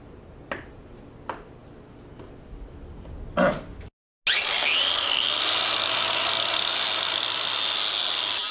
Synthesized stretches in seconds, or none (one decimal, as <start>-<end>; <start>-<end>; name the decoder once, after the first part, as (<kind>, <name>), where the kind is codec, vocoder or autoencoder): none